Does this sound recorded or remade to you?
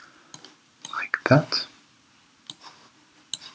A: recorded